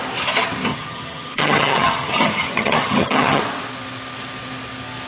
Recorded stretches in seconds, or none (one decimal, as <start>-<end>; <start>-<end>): 0.0-0.7; 3.4-5.1